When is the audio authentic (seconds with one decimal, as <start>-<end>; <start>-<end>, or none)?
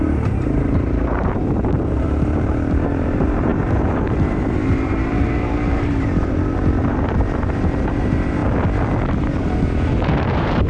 8.4-10.0